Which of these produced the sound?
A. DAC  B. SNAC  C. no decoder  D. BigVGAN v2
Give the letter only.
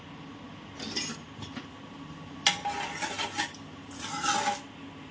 C